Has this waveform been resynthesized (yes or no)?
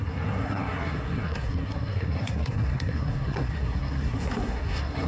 yes